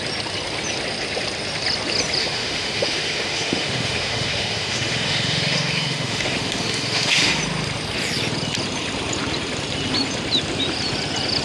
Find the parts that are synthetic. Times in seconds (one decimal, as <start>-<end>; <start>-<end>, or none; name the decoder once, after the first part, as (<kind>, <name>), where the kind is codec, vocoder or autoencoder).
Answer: 2.2-7.4 (autoencoder, DAC-VAE)